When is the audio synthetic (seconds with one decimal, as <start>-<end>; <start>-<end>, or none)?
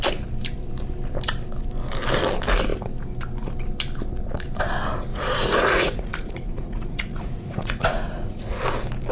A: 5.1-8.6